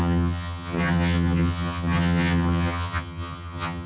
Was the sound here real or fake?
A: fake